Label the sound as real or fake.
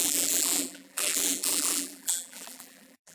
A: fake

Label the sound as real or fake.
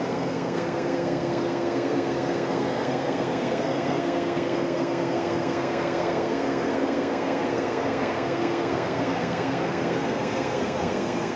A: fake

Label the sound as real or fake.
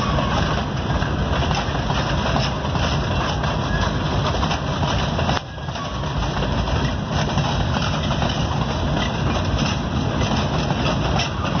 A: real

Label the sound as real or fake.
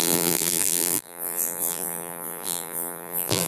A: fake